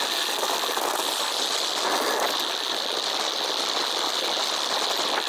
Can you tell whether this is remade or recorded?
recorded